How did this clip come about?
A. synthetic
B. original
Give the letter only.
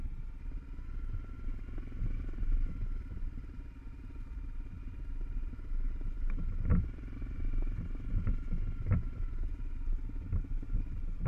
B